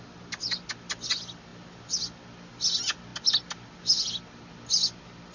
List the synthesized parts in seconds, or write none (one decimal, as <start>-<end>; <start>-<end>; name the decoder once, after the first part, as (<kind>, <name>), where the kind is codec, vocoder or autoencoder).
none